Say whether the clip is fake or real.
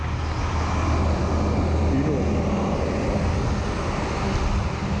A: real